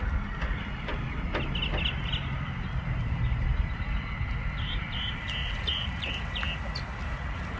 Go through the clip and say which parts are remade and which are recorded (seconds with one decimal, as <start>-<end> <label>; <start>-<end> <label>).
0.0-5.4 recorded; 5.4-6.1 remade; 6.1-7.6 recorded